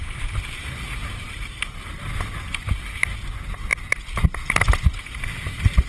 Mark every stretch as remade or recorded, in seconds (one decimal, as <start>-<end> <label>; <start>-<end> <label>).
0.0-5.9 recorded